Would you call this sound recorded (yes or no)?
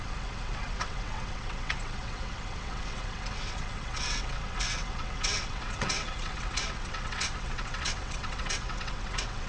no